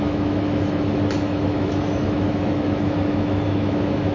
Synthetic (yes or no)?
yes